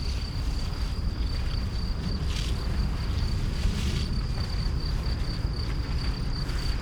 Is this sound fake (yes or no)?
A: no